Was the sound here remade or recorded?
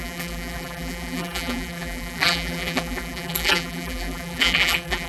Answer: remade